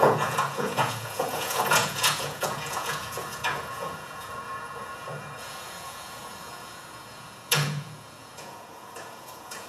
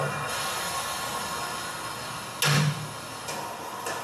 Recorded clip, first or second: second